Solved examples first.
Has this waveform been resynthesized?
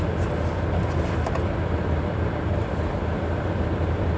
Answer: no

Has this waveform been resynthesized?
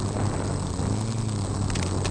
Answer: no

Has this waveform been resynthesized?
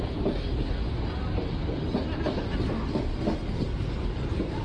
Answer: no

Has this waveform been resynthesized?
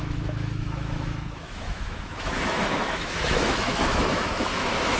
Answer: yes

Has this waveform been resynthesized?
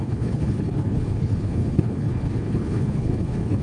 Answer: yes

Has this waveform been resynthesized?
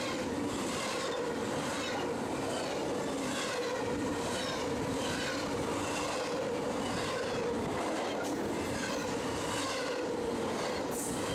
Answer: yes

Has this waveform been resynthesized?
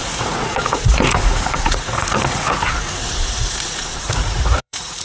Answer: yes